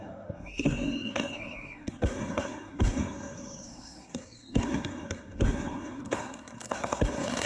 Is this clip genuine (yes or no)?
no